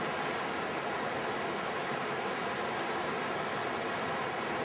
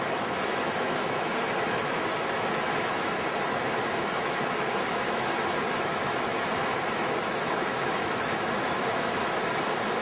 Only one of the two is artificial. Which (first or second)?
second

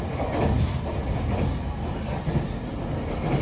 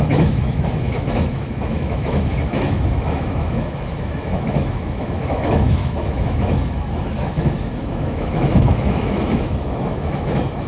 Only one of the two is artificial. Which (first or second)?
second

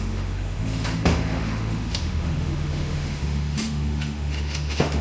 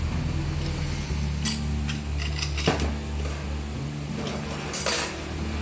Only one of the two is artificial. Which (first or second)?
first